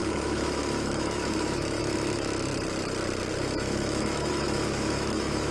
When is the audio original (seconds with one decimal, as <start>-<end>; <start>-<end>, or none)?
2.5-3.6